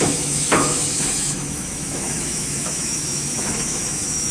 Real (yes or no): no